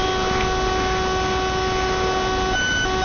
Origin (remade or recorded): recorded